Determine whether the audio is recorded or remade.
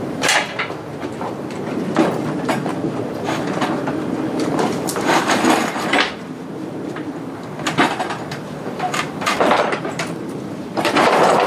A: remade